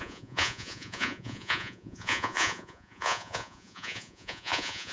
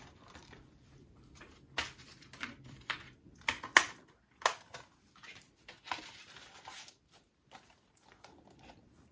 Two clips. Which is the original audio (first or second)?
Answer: second